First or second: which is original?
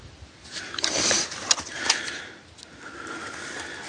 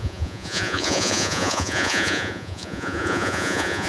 first